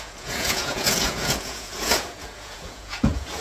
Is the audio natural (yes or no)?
no